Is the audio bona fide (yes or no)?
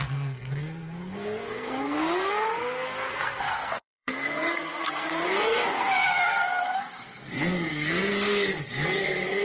no